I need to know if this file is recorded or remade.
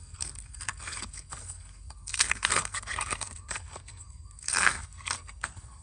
remade